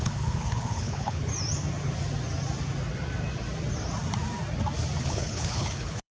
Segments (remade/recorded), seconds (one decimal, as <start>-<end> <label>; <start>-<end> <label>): 0.0-1.3 remade; 1.3-5.0 recorded; 5.0-6.2 remade